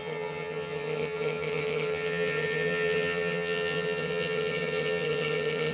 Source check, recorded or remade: remade